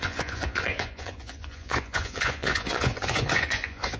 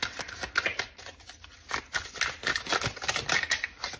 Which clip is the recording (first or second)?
second